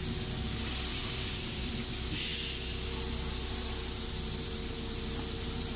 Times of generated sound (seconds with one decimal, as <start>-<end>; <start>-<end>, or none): 1.0-1.7